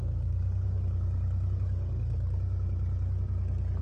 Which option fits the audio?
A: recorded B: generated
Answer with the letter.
A